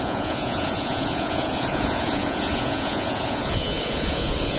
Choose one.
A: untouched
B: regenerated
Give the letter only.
B